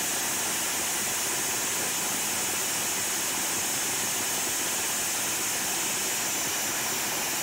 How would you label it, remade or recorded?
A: recorded